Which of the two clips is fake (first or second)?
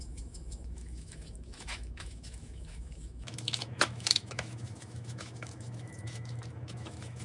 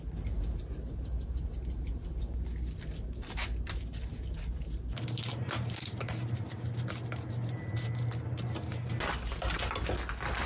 first